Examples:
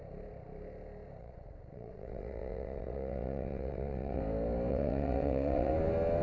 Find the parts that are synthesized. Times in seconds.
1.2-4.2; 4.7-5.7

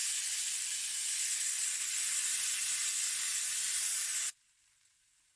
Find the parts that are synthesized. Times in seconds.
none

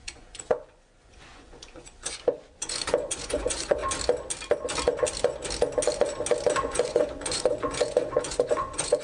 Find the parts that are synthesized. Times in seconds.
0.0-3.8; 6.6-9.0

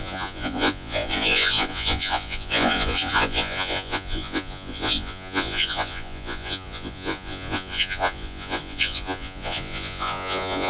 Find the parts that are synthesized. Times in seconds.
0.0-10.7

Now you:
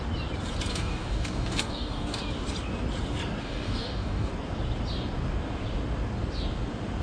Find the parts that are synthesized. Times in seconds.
0.7-2.2; 3.4-4.3

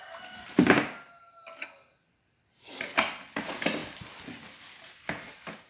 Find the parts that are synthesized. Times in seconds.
none

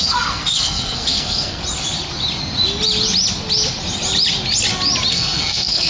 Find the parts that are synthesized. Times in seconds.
0.0-1.6; 5.1-5.9

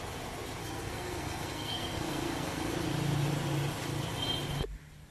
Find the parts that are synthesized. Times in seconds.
0.6-2.7